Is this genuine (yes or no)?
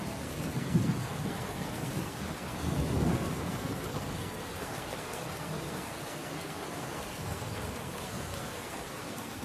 no